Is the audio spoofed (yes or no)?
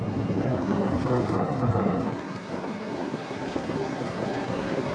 yes